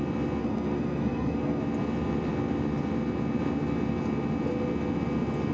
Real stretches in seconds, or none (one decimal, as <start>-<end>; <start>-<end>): 0.0-0.4; 1.6-5.5